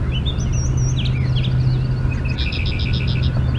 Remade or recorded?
recorded